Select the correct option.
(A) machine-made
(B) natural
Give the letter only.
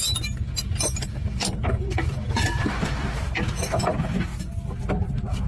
A